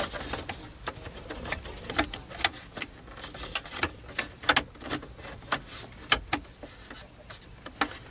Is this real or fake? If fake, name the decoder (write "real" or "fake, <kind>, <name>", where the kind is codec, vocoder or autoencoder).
real